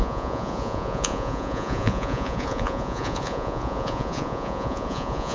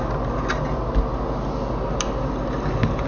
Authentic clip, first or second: second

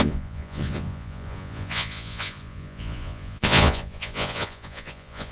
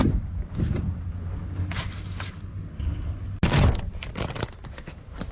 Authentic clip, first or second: second